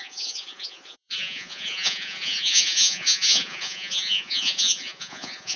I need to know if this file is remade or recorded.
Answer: remade